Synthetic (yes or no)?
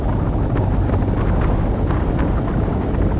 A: no